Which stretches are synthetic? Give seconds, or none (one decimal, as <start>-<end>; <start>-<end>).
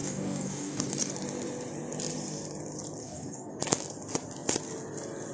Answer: 0.0-1.1; 3.0-3.5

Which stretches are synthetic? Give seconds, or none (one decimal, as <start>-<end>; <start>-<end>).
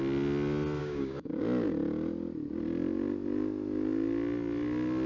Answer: 0.8-1.4